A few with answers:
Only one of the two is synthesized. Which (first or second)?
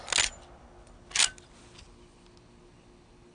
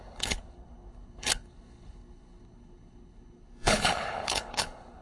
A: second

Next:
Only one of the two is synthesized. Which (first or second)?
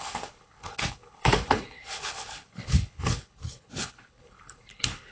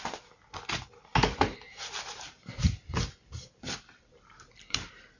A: first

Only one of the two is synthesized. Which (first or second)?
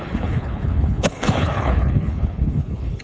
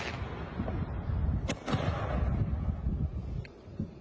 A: first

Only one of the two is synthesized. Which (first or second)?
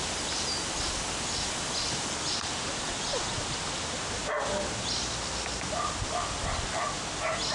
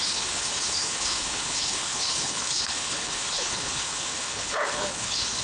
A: second